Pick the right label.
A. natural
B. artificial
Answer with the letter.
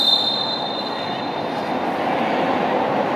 A